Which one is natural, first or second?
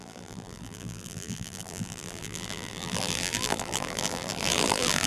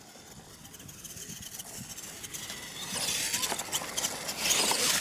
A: second